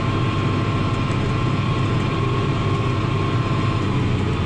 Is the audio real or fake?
real